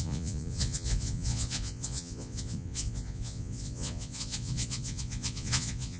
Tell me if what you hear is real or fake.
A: fake